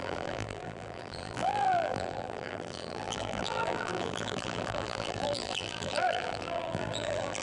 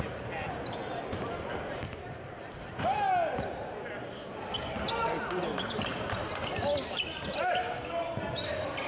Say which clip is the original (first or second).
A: second